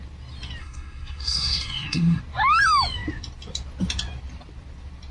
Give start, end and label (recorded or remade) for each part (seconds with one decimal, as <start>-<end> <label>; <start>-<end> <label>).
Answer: 0.0-0.6 recorded; 0.6-2.2 remade; 2.2-5.1 recorded